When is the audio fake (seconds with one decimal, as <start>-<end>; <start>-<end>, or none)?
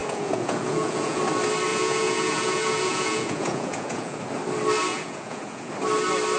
0.0-1.2; 1.7-4.2; 4.9-5.7